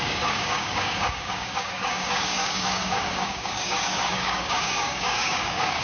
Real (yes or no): no